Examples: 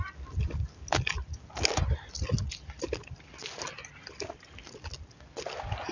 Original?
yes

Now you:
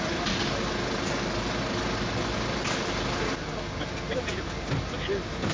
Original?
yes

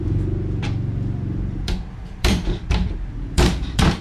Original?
no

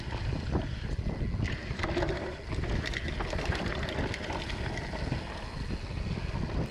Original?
yes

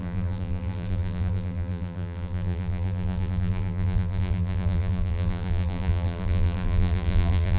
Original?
no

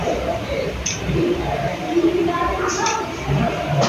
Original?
no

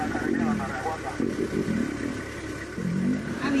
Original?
yes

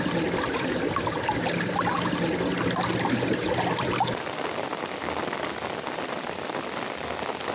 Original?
yes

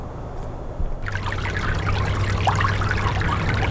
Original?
yes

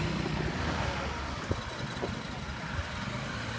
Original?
yes